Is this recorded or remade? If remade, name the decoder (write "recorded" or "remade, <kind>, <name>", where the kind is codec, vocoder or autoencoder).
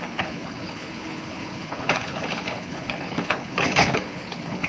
remade, codec, HILCodec